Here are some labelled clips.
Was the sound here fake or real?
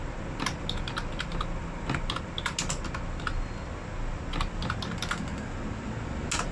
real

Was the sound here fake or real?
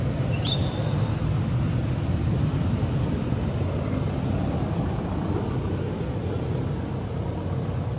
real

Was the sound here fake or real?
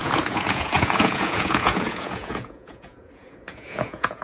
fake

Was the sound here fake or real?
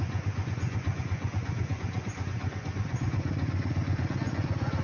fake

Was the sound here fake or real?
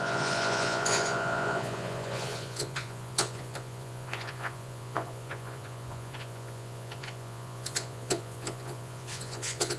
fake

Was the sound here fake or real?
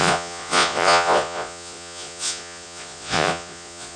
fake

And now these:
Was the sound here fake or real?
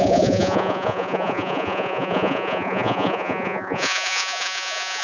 fake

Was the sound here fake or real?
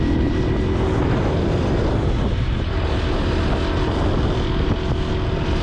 real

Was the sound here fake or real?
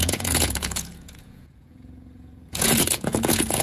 fake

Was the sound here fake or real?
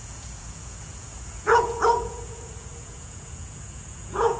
fake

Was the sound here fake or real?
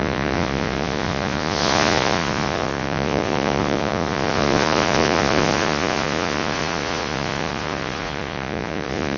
fake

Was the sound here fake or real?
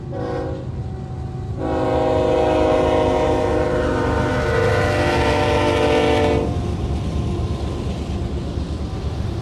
real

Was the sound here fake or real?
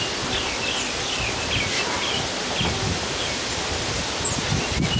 real